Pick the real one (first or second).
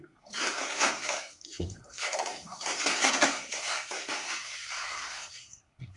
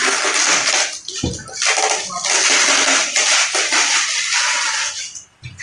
second